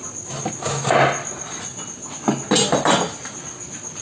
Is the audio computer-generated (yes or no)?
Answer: no